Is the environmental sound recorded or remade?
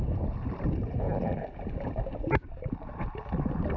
recorded